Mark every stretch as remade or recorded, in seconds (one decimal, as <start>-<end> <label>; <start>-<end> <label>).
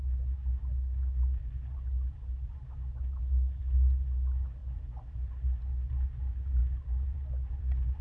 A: 0.0-8.0 recorded